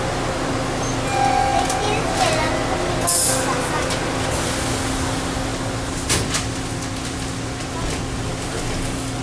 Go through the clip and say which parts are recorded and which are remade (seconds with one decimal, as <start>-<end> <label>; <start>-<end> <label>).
0.0-9.2 recorded